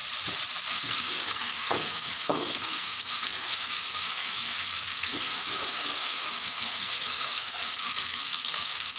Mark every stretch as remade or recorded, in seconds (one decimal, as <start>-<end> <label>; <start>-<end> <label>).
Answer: 0.0-0.7 recorded; 0.7-9.0 remade